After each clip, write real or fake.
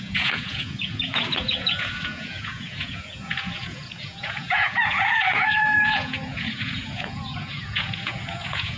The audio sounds fake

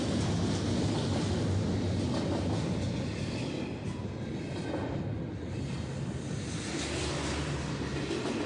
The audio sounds real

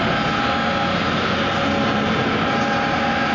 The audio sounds real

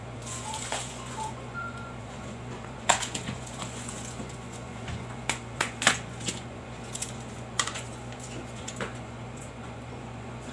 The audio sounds fake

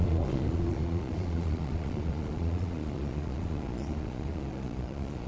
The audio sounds fake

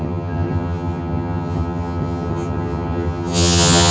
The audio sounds fake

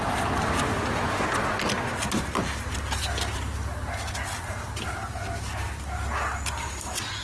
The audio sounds real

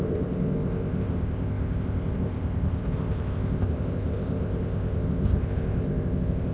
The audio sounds fake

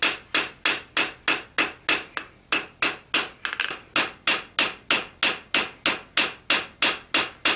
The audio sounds real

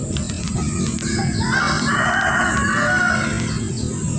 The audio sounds real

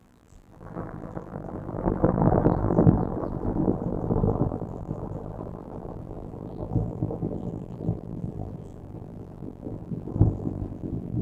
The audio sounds fake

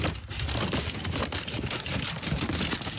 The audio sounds real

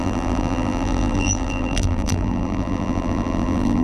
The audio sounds fake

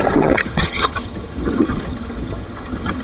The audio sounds fake